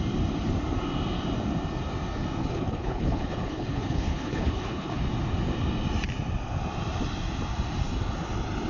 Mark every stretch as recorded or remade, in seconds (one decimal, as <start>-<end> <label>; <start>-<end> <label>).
0.0-2.4 recorded; 2.4-5.0 remade; 5.0-8.7 recorded